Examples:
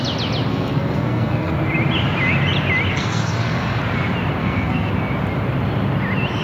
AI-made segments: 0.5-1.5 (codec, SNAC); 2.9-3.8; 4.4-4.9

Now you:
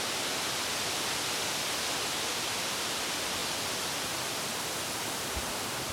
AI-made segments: none